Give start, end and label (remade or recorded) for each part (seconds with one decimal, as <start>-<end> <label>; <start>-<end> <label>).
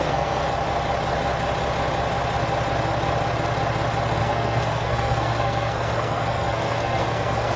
0.0-0.4 remade; 0.4-4.2 recorded; 4.2-7.6 remade